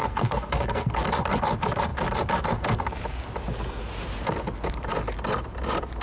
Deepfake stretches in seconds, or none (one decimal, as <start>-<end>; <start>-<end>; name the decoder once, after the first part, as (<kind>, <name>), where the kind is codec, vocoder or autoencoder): 0.0-1.0 (codec, SNAC)

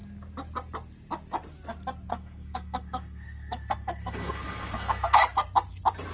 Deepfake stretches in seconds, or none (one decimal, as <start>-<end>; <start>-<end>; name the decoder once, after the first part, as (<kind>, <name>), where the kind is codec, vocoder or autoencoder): 2.1-5.2 (codec, SNAC)

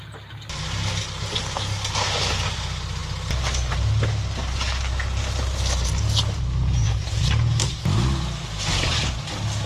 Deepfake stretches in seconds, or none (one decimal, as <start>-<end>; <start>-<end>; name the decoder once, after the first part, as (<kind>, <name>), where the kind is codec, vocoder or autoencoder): none

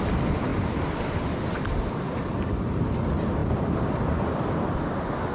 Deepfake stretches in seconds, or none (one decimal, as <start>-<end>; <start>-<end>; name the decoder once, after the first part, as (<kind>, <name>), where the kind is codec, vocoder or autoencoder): none

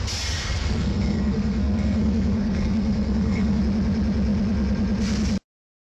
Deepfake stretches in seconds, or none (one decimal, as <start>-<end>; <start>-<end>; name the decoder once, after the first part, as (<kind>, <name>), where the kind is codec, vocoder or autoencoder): 0.4-3.6 (codec, SNAC)

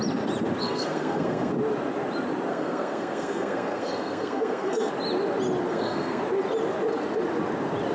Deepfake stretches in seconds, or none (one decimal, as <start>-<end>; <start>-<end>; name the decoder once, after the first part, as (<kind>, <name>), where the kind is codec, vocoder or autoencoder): 0.6-1.5 (codec, SNAC); 2.5-4.9; 5.7-6.2

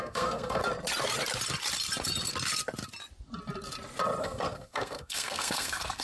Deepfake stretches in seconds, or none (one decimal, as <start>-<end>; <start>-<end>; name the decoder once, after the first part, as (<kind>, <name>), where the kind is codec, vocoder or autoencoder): 0.0-0.6 (codec, SNAC); 4.2-6.0

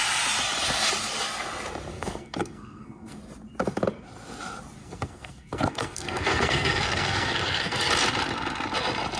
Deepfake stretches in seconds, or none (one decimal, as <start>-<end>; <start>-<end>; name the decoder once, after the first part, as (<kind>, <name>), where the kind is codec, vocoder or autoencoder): 1.9-3.2 (codec, SNAC); 4.8-7.9